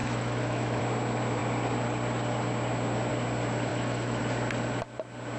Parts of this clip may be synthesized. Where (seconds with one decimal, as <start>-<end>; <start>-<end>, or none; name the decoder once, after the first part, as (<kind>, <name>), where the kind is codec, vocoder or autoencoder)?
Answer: 0.0-0.8 (autoencoder, DAC-VAE); 3.7-4.2